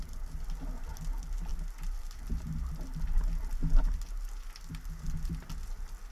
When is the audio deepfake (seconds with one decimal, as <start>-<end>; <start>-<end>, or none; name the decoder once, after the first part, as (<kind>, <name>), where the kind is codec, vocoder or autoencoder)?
none